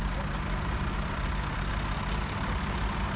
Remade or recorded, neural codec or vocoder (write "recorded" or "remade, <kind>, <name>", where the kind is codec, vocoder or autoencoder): recorded